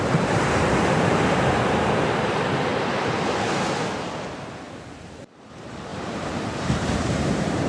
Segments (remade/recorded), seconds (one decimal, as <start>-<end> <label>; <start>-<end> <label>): 0.0-2.7 remade; 2.7-4.9 recorded; 4.9-7.7 remade